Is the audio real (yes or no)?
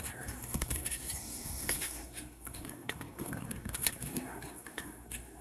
no